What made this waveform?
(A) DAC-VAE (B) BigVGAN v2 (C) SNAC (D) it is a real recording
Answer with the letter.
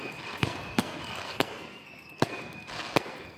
C